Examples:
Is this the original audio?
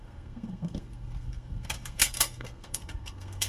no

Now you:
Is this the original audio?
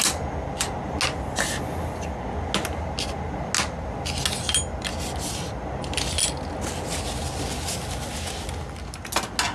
yes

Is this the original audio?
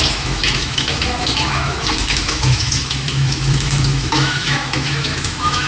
no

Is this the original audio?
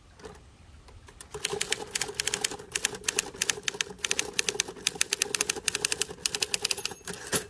yes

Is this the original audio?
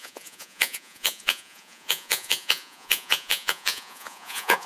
no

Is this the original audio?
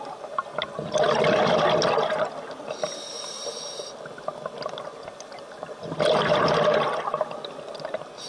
yes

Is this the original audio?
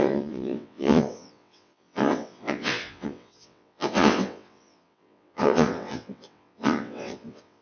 no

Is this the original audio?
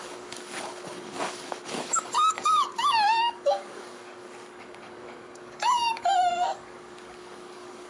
no